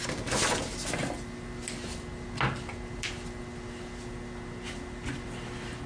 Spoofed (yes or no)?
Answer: no